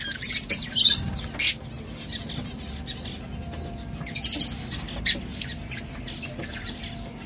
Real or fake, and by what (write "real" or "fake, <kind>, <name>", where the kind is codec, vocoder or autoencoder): real